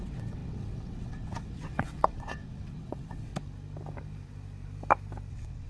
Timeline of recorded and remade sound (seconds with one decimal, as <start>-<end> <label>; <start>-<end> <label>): 0.0-3.3 remade; 3.3-5.3 recorded; 5.3-5.7 remade